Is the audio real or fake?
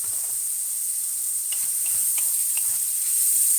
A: real